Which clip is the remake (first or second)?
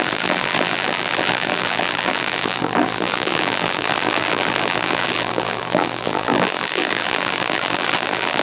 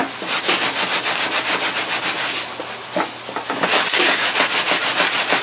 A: first